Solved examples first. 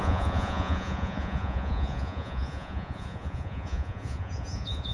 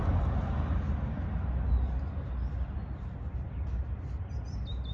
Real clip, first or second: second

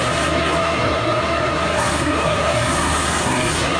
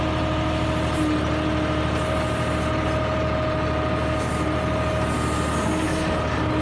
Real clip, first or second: second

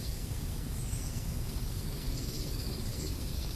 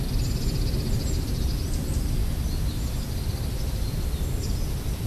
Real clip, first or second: second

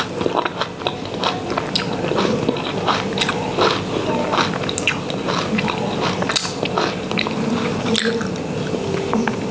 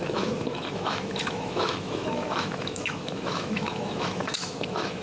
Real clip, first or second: first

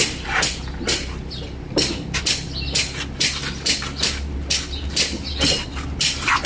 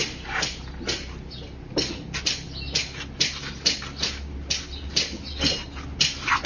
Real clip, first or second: second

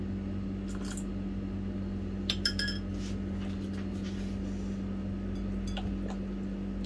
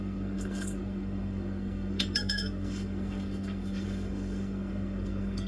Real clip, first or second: first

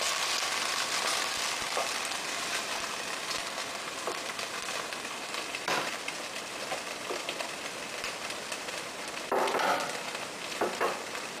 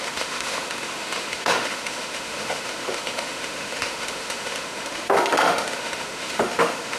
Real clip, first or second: first